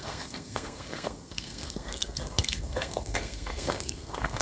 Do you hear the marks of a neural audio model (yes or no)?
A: yes